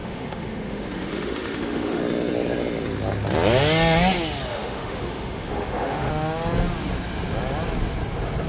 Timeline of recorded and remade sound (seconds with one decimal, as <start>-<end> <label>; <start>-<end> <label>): 0.0-2.0 remade; 2.0-4.5 recorded; 4.5-6.1 remade; 6.1-8.5 recorded